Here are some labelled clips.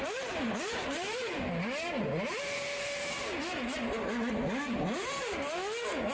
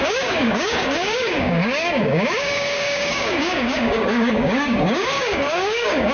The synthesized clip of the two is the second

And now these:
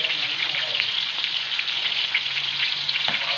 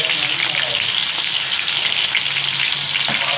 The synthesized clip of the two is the first